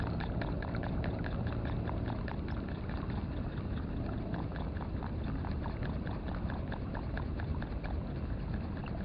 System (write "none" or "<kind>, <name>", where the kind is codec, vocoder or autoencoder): none